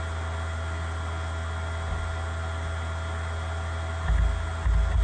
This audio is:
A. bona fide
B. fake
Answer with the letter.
A